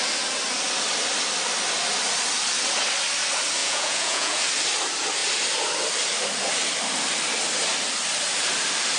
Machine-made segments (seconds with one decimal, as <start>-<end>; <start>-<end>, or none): 3.6-4.4